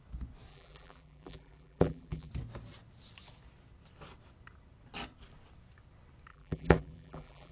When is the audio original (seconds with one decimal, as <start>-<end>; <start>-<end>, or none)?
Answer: 0.0-0.5; 2.3-6.3